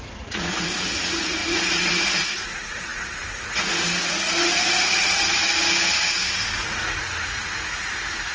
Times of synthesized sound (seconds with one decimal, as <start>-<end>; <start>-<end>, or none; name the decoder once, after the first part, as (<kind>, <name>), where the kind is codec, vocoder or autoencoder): 0.0-5.6 (vocoder, Vocos); 6.6-8.3